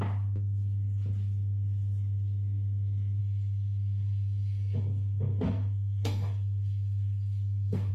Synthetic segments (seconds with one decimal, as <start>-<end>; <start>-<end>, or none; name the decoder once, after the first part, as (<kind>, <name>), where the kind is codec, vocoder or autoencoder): 3.2-7.9 (codec, SNAC)